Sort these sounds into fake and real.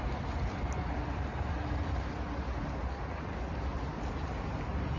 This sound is real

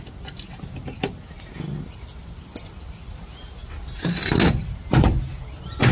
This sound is real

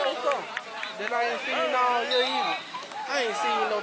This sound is real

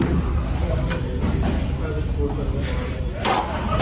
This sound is real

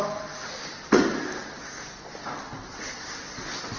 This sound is real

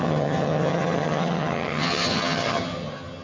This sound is fake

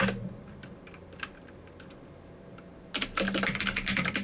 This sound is real